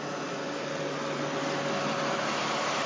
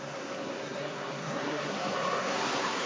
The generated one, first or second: second